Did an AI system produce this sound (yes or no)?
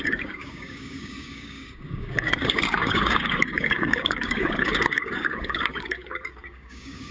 yes